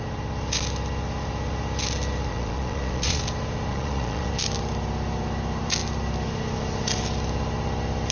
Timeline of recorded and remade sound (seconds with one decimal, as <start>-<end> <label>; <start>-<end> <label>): 0.0-2.3 recorded; 2.3-3.2 remade; 3.2-3.7 recorded; 3.7-4.3 remade; 4.3-8.1 recorded